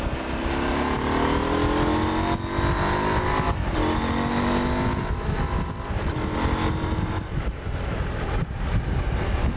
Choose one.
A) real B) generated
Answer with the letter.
A